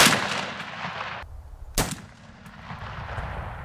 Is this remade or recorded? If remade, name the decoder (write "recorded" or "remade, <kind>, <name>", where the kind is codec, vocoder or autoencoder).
recorded